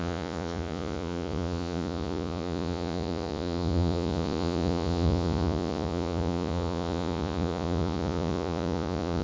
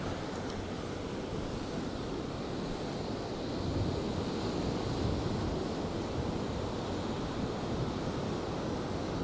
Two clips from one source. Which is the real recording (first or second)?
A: second